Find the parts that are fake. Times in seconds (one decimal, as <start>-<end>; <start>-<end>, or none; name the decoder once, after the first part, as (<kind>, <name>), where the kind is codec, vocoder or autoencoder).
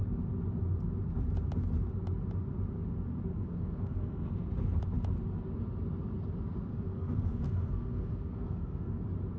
3.3-4.3 (codec, SNAC); 6.7-9.0